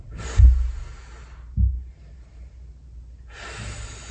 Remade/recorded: recorded